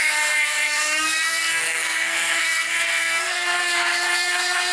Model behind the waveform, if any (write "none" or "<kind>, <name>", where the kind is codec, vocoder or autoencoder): codec, SNAC